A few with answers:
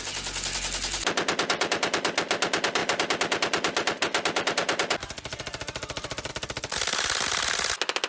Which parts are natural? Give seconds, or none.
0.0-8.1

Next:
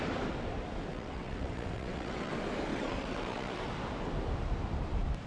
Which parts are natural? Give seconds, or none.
0.0-0.9; 2.3-2.7; 3.7-5.3